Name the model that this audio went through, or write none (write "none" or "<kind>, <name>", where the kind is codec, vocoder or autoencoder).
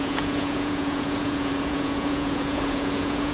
vocoder, Vocos